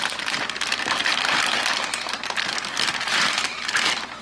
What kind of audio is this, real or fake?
real